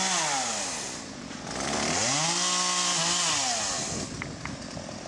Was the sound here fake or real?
real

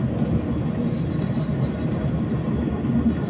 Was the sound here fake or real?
real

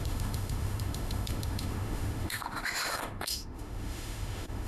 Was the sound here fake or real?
fake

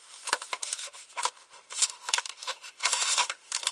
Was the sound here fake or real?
fake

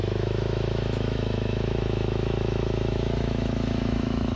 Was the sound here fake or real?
fake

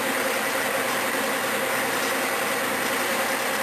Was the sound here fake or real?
real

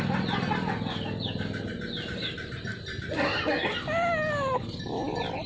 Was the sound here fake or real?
real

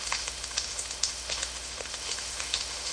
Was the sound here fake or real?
fake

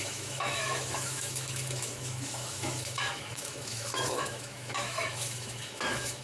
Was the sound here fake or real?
fake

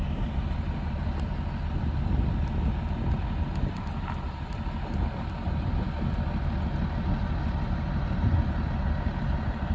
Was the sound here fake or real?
real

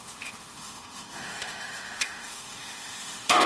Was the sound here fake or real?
fake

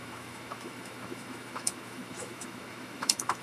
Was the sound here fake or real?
fake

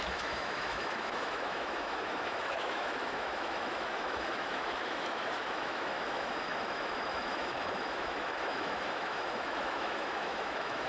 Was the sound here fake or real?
fake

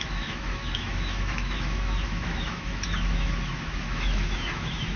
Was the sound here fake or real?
fake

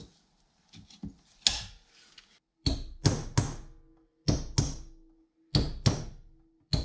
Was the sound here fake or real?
real